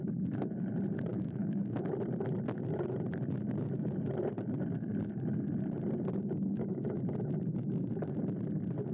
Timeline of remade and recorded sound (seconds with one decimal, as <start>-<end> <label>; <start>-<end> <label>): 0.0-1.1 recorded; 1.1-1.9 remade; 1.9-6.5 recorded; 6.5-7.0 remade; 7.0-8.9 recorded